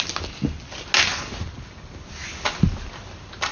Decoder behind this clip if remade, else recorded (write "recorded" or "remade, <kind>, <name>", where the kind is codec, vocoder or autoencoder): recorded